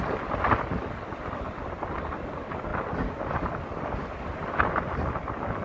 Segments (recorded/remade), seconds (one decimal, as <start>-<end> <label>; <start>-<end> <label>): 0.0-5.6 recorded